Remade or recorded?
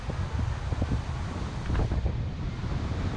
recorded